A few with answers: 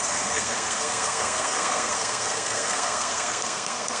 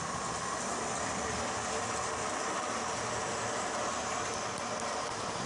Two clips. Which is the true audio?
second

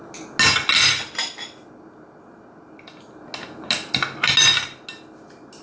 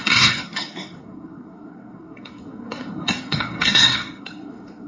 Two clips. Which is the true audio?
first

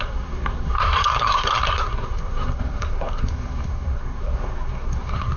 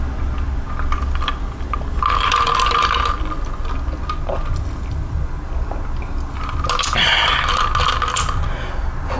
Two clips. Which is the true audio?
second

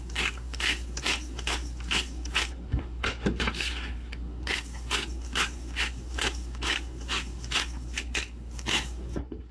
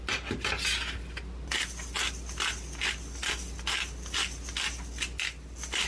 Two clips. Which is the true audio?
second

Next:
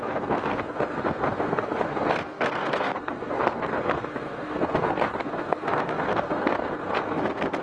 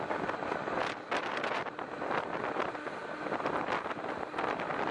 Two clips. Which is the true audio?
second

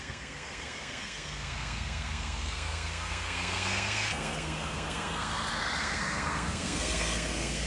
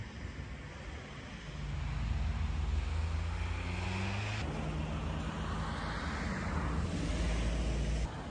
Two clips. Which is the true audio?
second